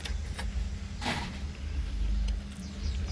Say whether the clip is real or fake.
real